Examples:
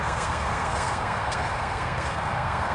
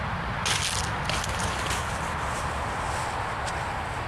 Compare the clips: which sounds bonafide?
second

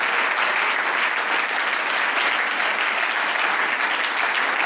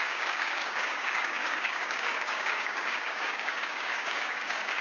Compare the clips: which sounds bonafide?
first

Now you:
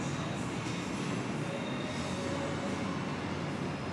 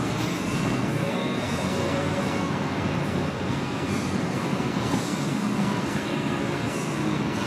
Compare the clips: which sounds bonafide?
first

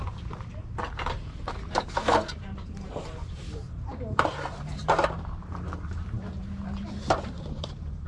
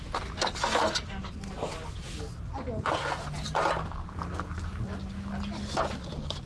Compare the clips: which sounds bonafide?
second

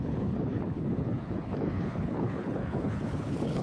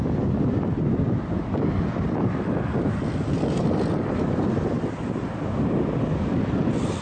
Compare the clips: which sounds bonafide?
second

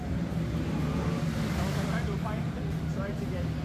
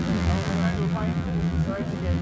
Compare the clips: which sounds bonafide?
first